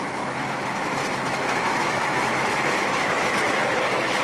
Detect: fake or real fake